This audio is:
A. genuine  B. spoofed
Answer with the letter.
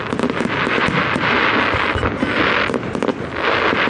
A